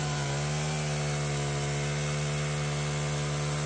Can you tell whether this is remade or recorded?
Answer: recorded